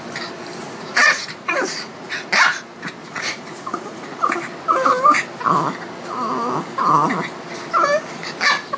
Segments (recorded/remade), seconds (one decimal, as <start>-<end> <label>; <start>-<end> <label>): 0.0-0.6 recorded; 0.6-2.3 remade; 2.3-3.0 recorded; 3.0-4.2 remade; 4.2-8.8 recorded